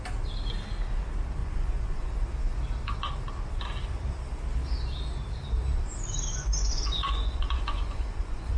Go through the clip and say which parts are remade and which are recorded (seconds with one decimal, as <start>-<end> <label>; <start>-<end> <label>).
0.0-1.4 recorded; 1.4-2.1 remade; 2.1-6.3 recorded; 6.3-8.6 remade